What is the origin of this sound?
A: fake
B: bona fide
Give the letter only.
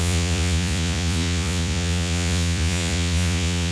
A